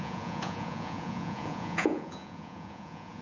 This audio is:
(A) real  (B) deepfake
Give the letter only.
B